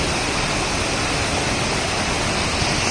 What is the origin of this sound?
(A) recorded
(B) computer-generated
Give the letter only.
A